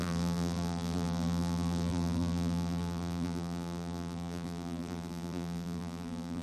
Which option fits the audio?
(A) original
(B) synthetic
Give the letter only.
B